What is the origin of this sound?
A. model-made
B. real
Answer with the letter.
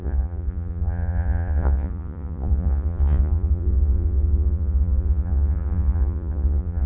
A